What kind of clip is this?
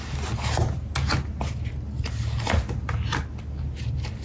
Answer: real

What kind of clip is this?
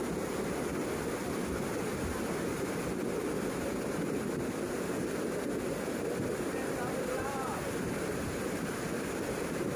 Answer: fake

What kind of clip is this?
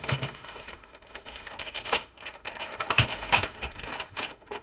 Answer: fake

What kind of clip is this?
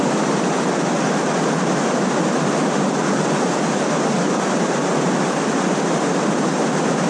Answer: real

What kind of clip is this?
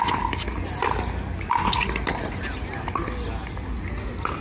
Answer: real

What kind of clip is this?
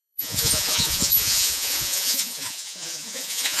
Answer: fake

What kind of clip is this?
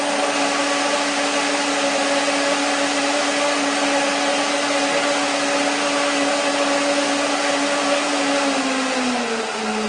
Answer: real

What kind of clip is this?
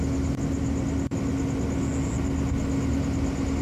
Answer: real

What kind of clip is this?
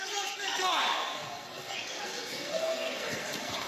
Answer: fake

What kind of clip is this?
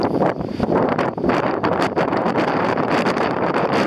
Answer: fake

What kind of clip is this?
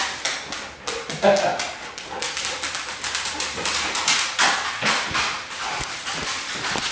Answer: real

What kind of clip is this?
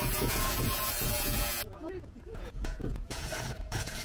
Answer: fake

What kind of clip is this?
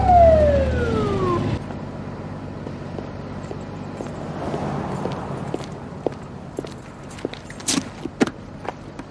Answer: real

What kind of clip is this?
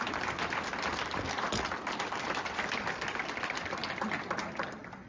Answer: real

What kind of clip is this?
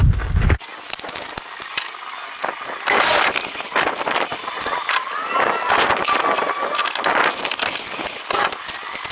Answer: real